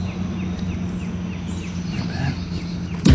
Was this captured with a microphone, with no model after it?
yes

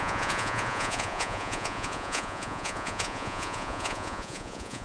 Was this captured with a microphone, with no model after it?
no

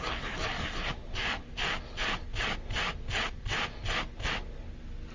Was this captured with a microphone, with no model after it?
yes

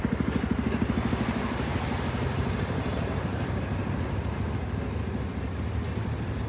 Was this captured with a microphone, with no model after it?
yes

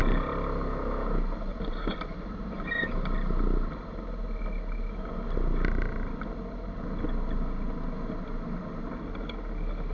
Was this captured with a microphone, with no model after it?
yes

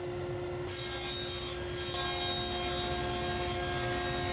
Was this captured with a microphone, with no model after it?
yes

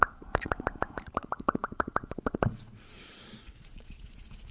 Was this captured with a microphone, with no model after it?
no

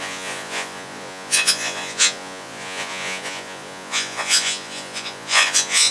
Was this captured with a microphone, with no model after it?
no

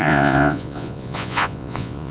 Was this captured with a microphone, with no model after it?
no